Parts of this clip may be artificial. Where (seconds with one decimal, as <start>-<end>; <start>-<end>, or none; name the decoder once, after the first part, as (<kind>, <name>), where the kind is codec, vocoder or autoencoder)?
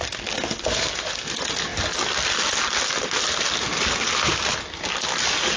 none